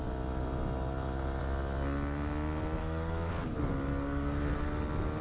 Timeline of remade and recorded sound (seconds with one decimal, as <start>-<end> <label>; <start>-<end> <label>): 0.0-2.8 recorded; 2.8-3.3 remade; 3.3-3.9 recorded; 3.9-4.4 remade; 4.4-5.2 recorded